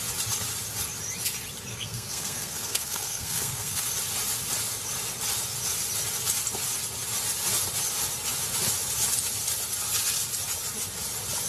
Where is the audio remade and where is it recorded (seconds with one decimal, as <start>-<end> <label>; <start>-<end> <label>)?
0.0-1.7 recorded; 1.7-3.8 remade; 3.8-11.5 recorded

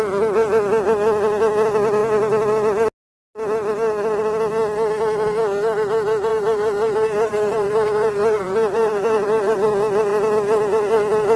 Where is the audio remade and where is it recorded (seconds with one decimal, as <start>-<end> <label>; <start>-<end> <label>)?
0.0-6.3 recorded; 6.3-9.7 remade; 9.7-11.4 recorded

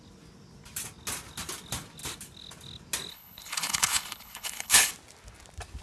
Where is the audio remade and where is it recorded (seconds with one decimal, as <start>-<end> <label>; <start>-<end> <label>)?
0.0-3.1 recorded; 3.1-4.9 remade; 4.9-5.8 recorded

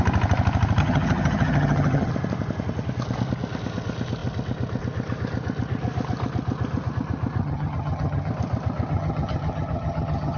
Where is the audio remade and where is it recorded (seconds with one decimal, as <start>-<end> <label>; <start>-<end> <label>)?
0.0-0.8 recorded; 0.8-2.1 remade; 2.1-7.4 recorded; 7.4-8.3 remade; 8.3-8.9 recorded; 8.9-10.4 remade